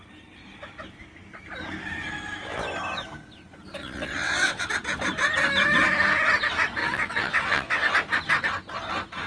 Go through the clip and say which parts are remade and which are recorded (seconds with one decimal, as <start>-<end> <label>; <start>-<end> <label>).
0.0-3.8 recorded; 3.8-4.7 remade; 4.7-6.8 recorded; 6.8-7.9 remade; 7.9-9.3 recorded